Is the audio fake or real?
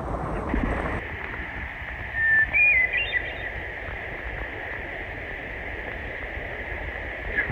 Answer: real